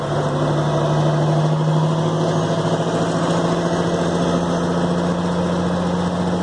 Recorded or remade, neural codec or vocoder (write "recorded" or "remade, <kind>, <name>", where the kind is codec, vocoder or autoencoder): recorded